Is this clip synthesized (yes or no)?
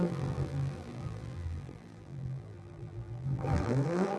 yes